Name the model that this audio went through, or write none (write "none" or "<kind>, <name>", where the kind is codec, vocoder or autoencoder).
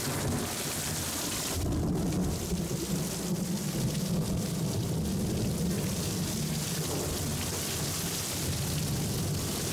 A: none